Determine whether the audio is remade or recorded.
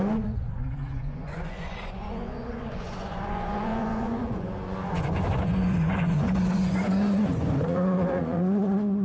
remade